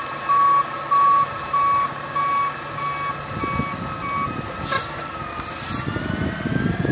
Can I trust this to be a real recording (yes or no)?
yes